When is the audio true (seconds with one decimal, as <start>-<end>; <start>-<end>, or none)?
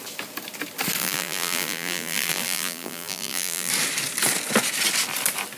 0.0-1.0; 3.7-5.6